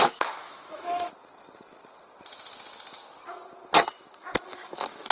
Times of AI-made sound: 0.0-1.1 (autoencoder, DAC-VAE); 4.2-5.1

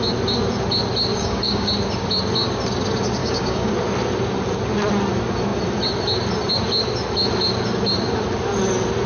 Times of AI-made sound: 1.1-1.7 (codec, DAC); 3.2-3.7

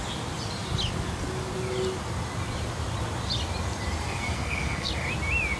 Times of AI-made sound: 4.0-4.9 (codec, SNAC)

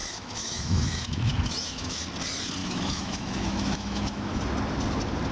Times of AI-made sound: 0.0-2.0 (autoencoder, DAC-VAE); 2.6-4.4

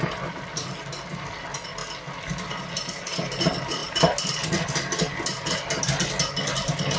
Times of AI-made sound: none

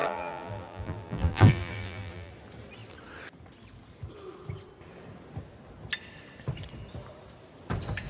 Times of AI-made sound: 0.0-2.3 (vocoder, BigVGAN v2)

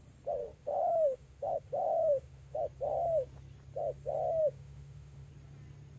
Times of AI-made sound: 0.4-2.6 (autoencoder, DAC-VAE); 4.4-5.3

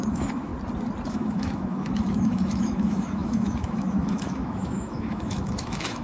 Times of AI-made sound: 0.0-0.5 (autoencoder, DAC-VAE); 1.1-6.0